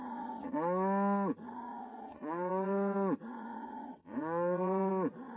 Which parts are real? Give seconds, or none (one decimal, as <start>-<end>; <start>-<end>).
0.0-1.7; 4.9-5.4